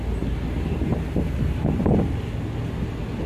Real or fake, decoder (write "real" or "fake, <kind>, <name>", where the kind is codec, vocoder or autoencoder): real